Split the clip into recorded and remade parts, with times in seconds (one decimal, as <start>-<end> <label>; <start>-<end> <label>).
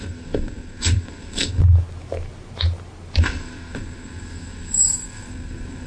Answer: 0.0-1.6 remade; 1.6-3.2 recorded; 3.2-5.9 remade